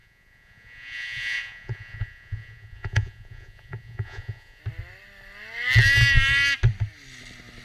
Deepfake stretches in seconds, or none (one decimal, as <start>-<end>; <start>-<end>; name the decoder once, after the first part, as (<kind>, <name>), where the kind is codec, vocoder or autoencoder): 0.0-4.6 (vocoder, Vocos)